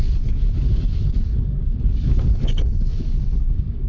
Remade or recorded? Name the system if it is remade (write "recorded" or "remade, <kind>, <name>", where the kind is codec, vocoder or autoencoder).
remade, codec, DAC